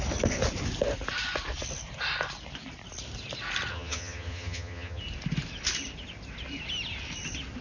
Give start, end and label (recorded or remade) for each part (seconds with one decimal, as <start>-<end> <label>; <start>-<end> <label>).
0.0-3.7 recorded; 3.7-5.0 remade; 5.0-7.6 recorded